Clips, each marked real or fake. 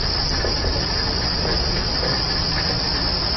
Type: real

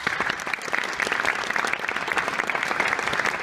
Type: real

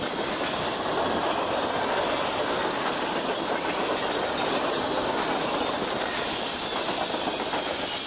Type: real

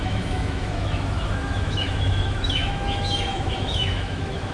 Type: fake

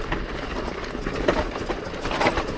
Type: real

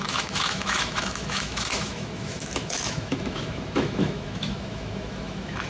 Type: fake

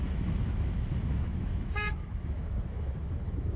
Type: fake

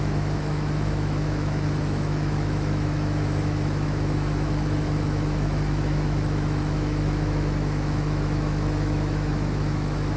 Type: fake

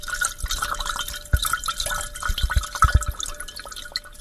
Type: real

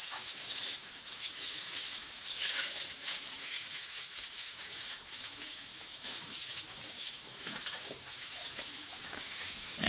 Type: fake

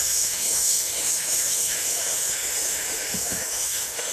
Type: fake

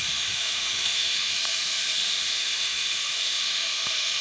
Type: fake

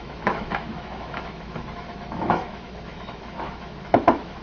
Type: fake